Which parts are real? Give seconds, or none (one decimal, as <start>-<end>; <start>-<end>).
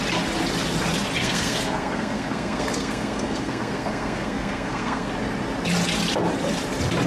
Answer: 0.0-1.2; 5.1-7.1